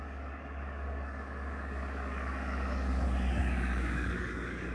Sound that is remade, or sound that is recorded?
remade